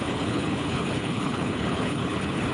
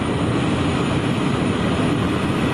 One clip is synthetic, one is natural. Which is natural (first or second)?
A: second